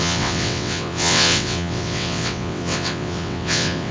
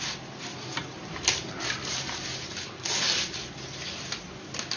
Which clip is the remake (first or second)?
first